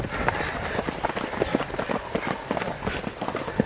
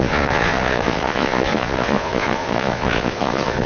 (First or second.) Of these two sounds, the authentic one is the first